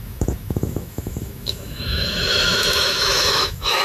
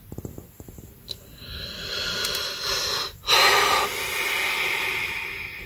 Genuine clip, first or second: second